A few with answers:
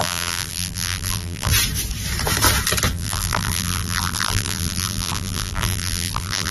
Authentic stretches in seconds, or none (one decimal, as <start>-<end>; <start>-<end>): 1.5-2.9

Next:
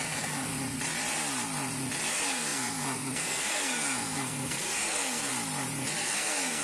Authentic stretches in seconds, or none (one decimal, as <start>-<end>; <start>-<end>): 0.5-2.1; 5.3-5.9

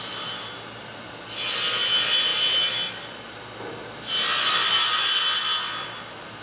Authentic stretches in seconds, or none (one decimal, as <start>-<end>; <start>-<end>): 0.0-6.4

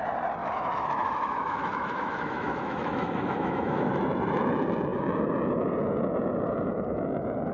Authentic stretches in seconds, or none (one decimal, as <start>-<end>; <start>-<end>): 0.0-0.4; 4.0-7.5